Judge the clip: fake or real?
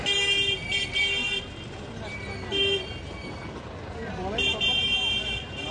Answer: real